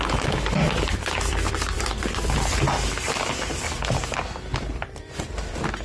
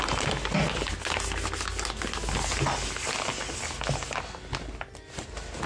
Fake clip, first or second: first